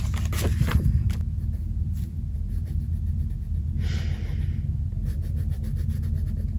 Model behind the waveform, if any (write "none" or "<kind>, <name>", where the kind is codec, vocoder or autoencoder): none